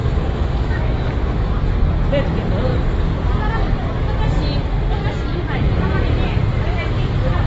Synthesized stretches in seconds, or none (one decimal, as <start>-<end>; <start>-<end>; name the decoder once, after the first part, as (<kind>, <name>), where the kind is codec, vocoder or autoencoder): 0.0-1.5 (autoencoder, DAC-VAE)